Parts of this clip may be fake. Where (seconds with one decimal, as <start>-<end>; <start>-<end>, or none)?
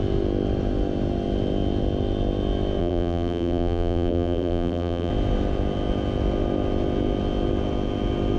2.8-5.1